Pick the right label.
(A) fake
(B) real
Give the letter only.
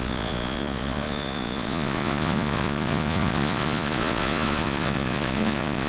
A